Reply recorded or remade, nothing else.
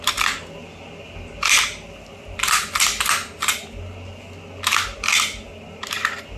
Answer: recorded